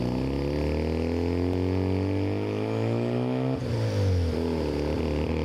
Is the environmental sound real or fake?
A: real